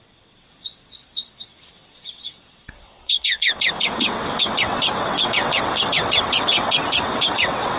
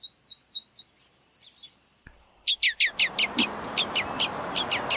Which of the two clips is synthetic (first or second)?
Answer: first